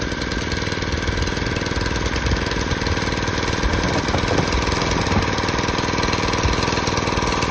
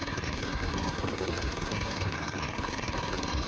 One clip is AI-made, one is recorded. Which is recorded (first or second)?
first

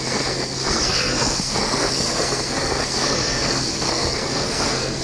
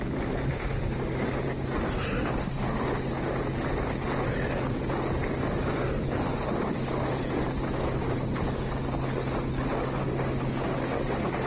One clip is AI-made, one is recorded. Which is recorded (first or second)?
second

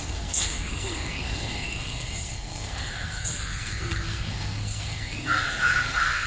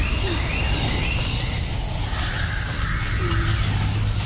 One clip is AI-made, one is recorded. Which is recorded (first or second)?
second